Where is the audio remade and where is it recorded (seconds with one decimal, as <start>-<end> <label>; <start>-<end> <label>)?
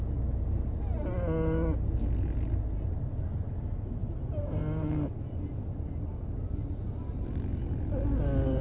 0.0-4.0 recorded; 4.0-4.6 remade; 4.6-8.6 recorded